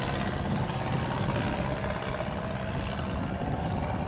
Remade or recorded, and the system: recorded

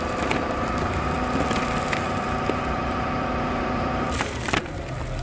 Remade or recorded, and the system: remade, vocoder, BigVGAN v2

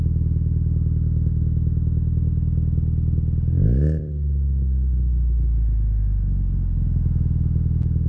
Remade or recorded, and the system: recorded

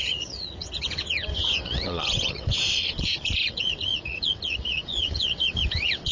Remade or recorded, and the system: remade, vocoder, WaveNeXt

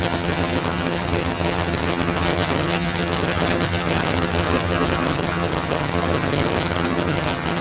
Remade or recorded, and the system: remade, vocoder, HiFi-GAN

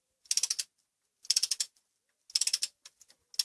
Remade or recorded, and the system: recorded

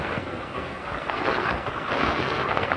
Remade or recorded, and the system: remade, codec, SNAC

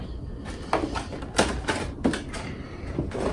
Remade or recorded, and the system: recorded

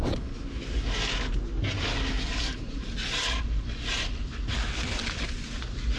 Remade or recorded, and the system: recorded